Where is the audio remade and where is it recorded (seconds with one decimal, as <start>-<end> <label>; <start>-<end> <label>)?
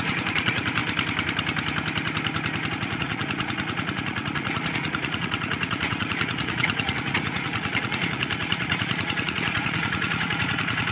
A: 0.0-0.8 remade; 0.8-2.7 recorded; 2.7-10.9 remade